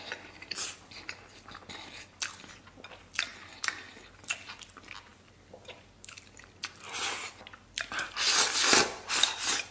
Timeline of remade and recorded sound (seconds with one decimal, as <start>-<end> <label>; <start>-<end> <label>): 0.0-9.7 recorded